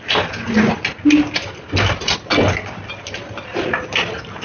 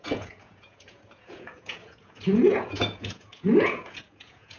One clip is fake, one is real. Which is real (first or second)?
first